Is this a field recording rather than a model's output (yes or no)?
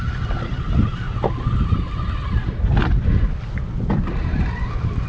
yes